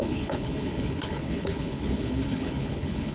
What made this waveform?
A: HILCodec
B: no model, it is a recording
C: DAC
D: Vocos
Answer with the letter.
A